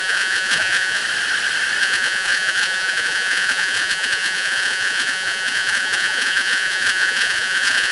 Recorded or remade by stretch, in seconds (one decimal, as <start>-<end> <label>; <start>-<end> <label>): 0.0-1.0 remade; 1.0-1.8 recorded; 1.8-7.9 remade